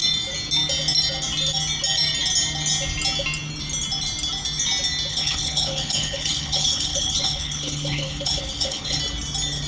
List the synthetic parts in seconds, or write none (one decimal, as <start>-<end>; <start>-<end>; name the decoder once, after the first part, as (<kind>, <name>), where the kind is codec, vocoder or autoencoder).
5.1-9.0 (codec, HILCodec)